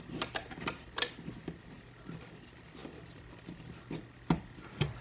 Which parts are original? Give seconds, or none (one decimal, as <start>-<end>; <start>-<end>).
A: 0.0-5.0